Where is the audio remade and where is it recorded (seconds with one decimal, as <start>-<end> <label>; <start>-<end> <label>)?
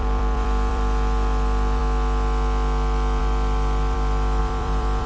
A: 0.0-1.8 remade; 1.8-3.2 recorded; 3.2-5.1 remade